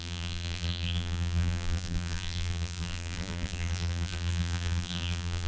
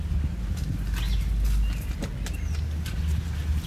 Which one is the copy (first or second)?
first